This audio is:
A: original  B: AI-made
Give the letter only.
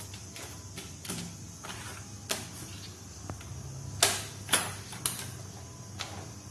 A